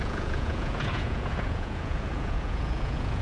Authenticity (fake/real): fake